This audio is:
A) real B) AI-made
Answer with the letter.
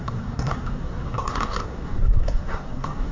B